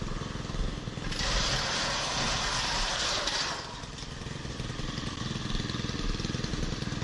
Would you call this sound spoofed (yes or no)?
no